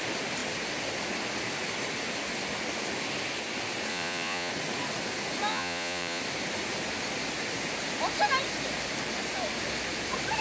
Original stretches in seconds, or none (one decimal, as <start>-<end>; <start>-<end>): 0.0-3.9; 4.5-5.5; 6.2-10.4